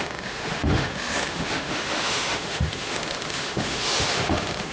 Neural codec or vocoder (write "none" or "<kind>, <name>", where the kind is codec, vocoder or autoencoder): autoencoder, DAC-VAE